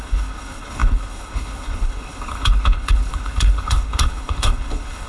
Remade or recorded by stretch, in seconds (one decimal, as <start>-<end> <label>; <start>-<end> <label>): 0.0-5.1 remade